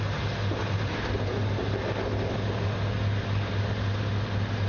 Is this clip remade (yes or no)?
no